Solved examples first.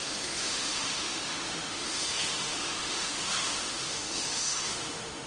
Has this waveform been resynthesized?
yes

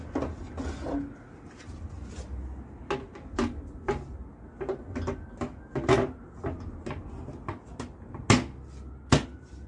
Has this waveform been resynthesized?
no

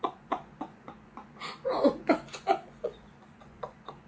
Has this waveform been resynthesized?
yes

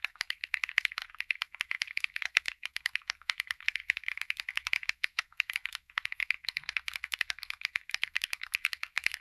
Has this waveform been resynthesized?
yes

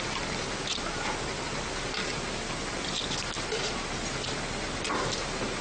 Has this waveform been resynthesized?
no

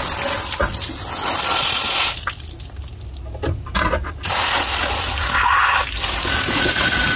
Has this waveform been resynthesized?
no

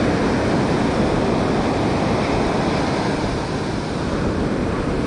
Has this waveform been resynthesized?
no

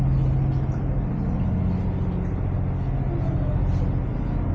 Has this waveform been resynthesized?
no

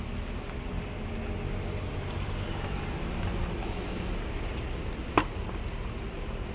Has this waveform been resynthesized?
no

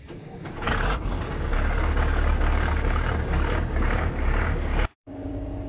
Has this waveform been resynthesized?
yes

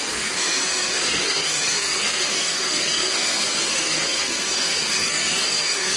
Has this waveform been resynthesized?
yes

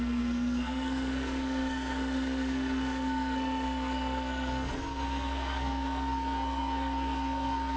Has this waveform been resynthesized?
yes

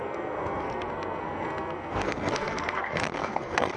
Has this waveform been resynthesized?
yes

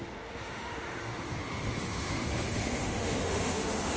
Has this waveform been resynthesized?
yes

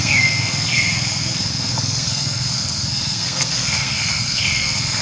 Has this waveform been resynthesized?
yes